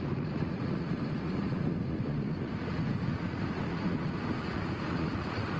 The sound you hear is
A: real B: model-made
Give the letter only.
B